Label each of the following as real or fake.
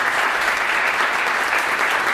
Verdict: fake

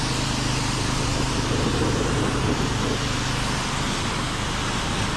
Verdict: real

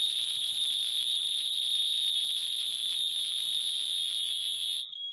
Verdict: fake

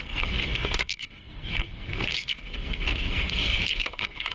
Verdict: fake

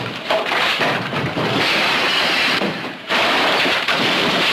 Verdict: fake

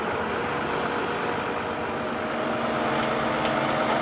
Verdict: real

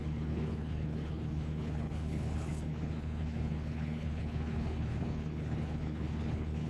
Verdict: fake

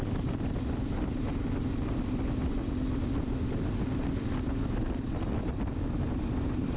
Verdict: real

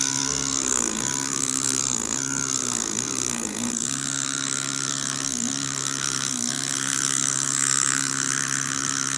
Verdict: fake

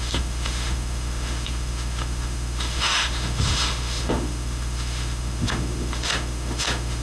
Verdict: fake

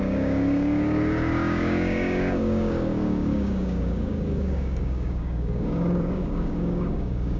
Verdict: fake